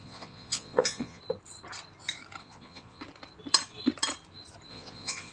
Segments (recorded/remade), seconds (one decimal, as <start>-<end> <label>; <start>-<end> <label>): 0.0-1.2 remade; 1.2-2.4 recorded; 2.4-3.0 remade; 3.0-4.7 recorded; 4.7-5.3 remade